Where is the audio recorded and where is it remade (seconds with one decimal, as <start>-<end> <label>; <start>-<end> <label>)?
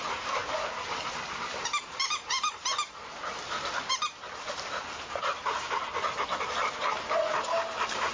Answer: 0.0-3.3 remade; 3.3-3.9 recorded; 3.9-8.1 remade